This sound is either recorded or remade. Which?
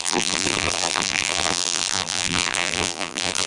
remade